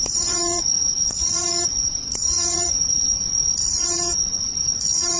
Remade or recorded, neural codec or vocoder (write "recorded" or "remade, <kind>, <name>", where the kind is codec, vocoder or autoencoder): remade, vocoder, Vocos